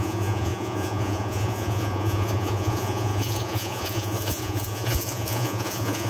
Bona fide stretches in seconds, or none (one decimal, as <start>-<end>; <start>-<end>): none